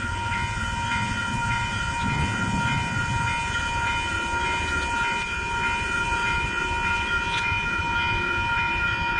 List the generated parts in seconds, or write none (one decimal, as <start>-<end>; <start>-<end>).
0.0-9.2